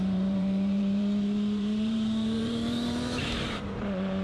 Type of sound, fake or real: fake